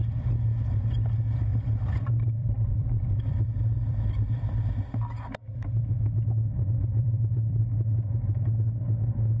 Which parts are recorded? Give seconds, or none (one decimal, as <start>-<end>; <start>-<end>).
0.0-1.5; 2.0-2.4; 4.9-7.0; 7.6-9.4